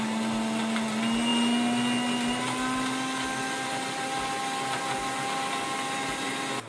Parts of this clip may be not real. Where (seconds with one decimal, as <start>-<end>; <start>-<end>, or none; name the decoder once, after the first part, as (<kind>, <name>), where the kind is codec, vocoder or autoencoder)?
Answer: none